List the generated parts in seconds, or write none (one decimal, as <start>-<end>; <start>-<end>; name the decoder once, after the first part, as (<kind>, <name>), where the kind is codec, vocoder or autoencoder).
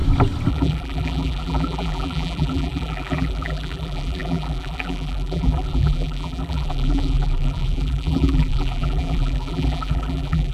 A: 0.5-10.5 (vocoder, BigVGAN v2)